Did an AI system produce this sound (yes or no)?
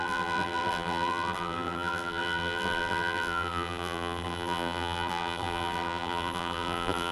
yes